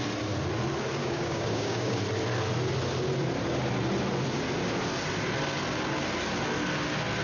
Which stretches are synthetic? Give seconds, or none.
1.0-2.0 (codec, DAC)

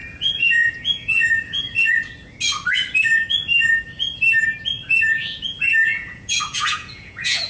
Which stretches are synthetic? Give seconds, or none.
0.0-1.9 (vocoder, Vocos); 5.2-7.5

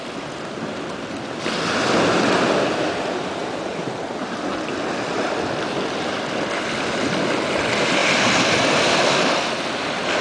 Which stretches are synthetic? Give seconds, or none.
none

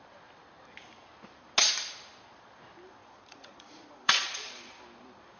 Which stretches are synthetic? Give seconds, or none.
3.0-4.8 (vocoder, Vocos)

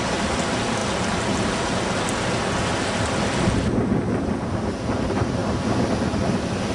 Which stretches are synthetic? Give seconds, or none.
none

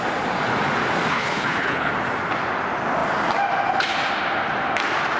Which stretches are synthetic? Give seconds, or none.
1.1-1.9 (codec, HILCodec)